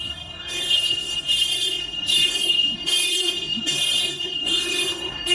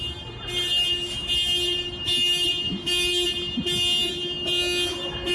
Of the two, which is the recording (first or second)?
second